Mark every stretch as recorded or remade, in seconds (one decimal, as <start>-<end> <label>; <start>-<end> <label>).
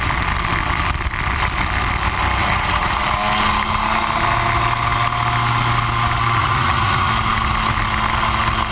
0.0-2.4 recorded; 2.4-3.0 remade; 3.0-6.4 recorded; 6.4-7.1 remade; 7.1-8.7 recorded